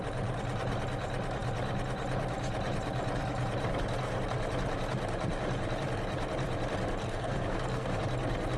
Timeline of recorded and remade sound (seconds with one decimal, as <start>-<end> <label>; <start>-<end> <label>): 0.0-7.0 recorded; 7.0-8.0 remade; 8.0-8.6 recorded